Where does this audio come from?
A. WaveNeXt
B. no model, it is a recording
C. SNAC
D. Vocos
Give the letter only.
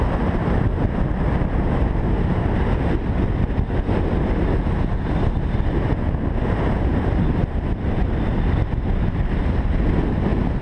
B